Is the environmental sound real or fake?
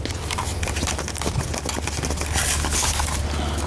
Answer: real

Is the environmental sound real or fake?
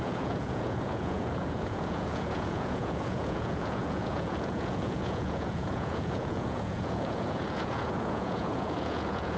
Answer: fake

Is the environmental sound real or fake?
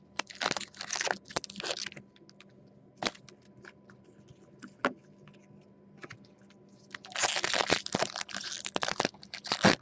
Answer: real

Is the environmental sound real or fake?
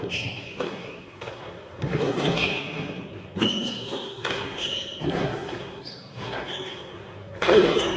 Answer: fake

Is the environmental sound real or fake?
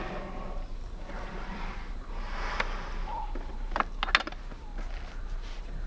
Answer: real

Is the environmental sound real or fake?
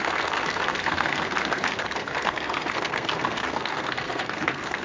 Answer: fake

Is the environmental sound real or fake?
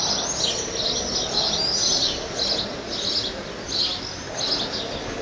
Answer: real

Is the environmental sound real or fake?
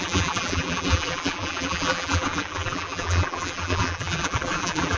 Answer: fake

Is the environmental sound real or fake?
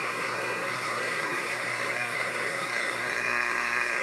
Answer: fake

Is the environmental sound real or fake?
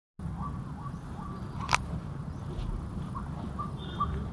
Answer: real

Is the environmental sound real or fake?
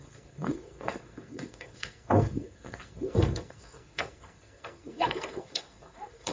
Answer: fake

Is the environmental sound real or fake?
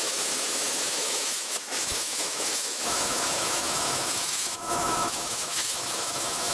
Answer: fake